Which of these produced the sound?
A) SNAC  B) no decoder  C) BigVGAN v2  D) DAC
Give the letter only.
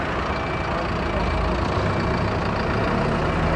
B